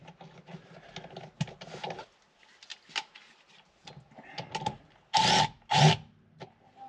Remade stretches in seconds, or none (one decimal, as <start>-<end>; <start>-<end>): none

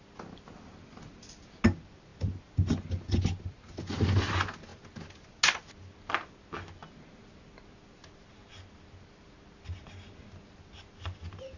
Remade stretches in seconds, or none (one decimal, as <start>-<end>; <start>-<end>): none

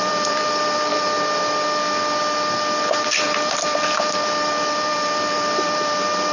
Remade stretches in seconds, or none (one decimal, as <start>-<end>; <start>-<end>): 0.0-0.9; 3.0-6.3

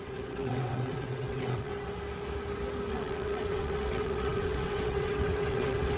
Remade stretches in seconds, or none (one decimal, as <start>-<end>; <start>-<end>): 0.0-1.7; 2.9-6.0